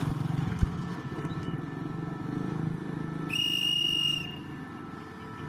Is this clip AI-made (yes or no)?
no